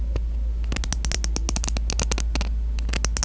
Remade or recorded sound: recorded